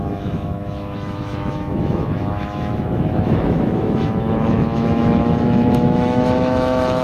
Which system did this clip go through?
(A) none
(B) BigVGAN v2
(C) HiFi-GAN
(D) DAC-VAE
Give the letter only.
D